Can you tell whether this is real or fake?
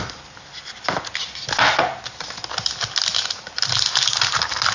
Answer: real